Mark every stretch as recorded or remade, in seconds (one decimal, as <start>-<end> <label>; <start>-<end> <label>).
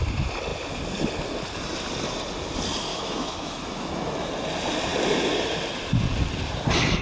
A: 0.0-2.9 recorded; 2.9-4.3 remade; 4.3-7.0 recorded